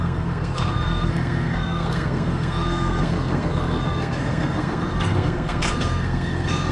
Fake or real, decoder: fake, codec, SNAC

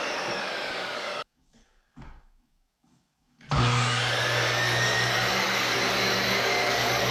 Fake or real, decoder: fake, codec, DAC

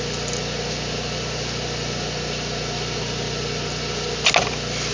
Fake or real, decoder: real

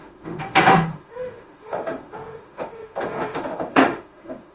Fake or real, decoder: fake, autoencoder, DAC-VAE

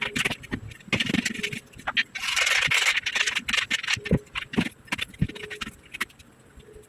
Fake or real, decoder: real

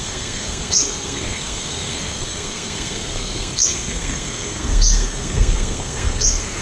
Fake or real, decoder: fake, codec, SNAC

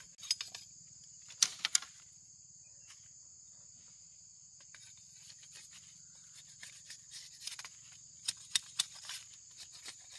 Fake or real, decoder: real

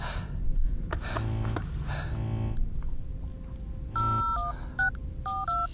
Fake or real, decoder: real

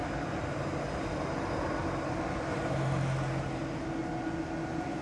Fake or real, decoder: real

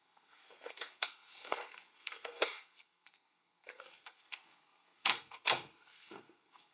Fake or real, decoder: fake, codec, SNAC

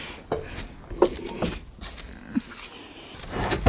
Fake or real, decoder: real